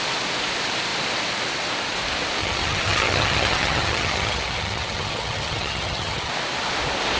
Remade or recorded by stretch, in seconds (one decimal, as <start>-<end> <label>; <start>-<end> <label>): 0.0-2.4 recorded; 2.4-6.3 remade; 6.3-7.2 recorded